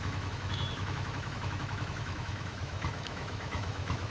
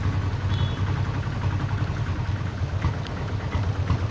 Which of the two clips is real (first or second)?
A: second